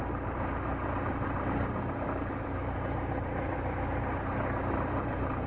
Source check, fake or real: fake